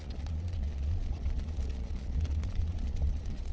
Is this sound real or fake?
fake